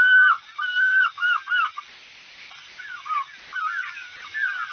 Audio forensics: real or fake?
real